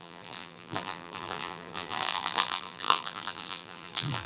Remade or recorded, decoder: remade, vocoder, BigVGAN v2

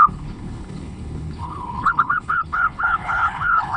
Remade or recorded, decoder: remade, codec, HILCodec